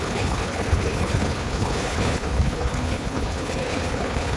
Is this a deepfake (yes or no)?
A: yes